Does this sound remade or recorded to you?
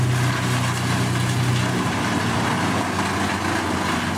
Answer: recorded